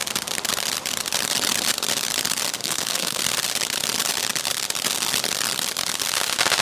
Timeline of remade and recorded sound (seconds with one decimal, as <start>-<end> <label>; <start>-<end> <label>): 0.0-2.6 recorded; 2.6-3.2 remade; 3.2-6.6 recorded